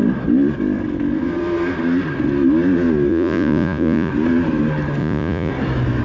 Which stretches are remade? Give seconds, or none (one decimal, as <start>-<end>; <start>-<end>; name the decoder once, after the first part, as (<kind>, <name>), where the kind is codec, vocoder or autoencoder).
3.1-4.1 (vocoder, Vocos); 5.0-5.5

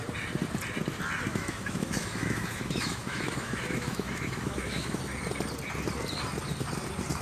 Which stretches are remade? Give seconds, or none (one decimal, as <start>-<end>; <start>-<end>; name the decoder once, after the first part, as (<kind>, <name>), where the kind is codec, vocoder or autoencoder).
1.3-5.0 (autoencoder, DAC-VAE)

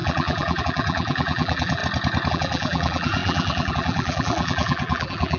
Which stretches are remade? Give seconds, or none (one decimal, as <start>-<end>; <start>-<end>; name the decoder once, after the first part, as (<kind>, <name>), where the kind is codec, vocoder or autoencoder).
0.0-1.8 (vocoder, BigVGAN v2); 2.3-5.4

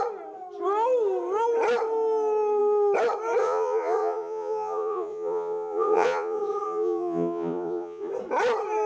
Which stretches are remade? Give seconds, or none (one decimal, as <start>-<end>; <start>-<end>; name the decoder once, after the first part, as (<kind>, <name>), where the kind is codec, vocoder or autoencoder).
3.4-8.1 (vocoder, Vocos)

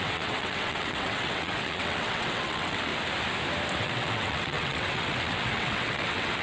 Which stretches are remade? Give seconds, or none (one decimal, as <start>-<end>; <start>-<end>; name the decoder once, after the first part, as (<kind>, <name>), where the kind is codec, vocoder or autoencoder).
0.0-2.9 (vocoder, WaveNeXt); 3.8-6.4

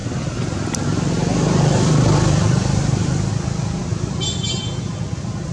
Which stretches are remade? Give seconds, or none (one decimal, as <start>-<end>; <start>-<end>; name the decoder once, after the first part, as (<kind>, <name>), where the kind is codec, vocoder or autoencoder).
0.0-3.3 (vocoder, BigVGAN v2)

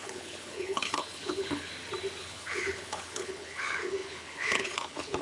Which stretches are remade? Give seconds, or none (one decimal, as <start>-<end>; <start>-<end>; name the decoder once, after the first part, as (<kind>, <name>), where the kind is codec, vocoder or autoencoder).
0.0-1.7 (codec, HILCodec); 2.2-5.2

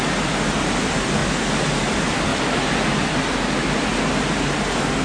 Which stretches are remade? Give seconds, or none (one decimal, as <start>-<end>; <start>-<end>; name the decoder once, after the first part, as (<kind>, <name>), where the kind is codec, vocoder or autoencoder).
none